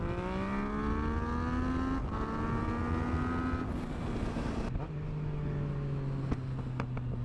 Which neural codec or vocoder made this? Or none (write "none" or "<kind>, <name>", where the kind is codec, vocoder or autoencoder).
none